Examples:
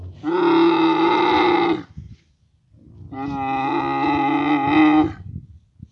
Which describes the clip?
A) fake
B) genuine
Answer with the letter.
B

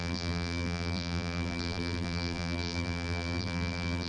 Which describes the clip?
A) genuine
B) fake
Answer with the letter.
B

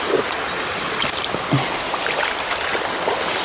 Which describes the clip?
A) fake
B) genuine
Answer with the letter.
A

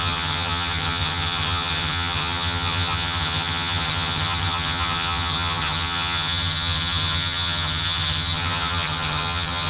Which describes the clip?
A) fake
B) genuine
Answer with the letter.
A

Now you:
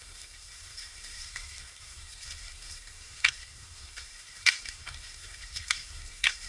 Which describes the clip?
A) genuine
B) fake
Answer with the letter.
B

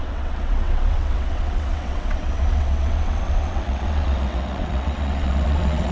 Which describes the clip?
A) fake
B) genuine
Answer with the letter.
A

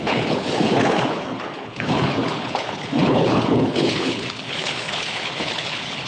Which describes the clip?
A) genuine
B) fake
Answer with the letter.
B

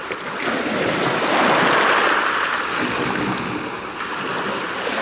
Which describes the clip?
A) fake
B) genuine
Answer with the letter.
B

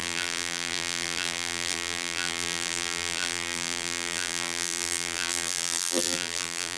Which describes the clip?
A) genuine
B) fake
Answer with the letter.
B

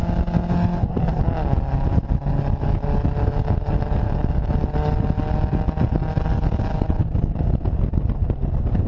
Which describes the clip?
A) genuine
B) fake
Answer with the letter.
A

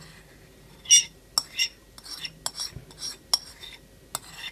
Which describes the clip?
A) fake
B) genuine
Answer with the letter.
B